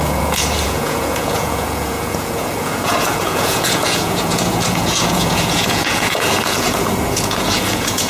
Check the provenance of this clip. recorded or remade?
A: remade